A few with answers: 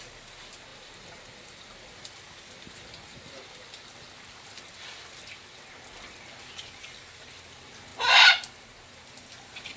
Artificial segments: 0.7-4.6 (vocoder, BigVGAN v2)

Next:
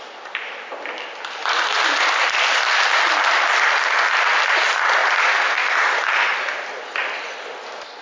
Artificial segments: none

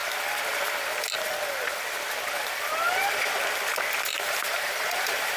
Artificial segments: 4.1-5.4 (vocoder, BigVGAN v2)

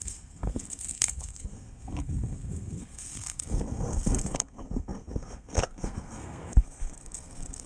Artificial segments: 0.0-7.7 (codec, SNAC)

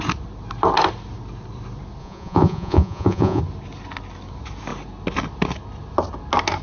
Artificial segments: 2.0-3.4 (vocoder, Vocos)

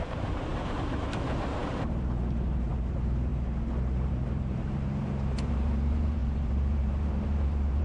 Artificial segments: 0.0-3.3 (vocoder, BigVGAN v2); 4.1-7.8

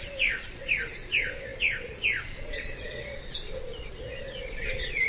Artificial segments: 0.0-5.1 (vocoder, Vocos)